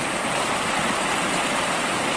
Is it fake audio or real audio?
real